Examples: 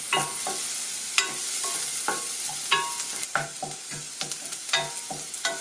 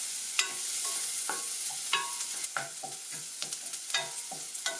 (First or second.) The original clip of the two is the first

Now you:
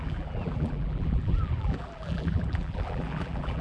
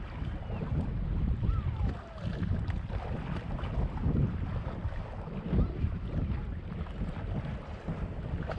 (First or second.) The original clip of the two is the second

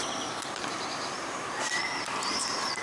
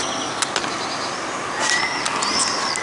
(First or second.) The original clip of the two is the second